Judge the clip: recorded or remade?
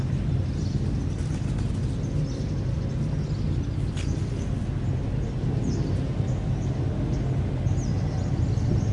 recorded